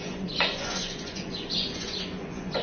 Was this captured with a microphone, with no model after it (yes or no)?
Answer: no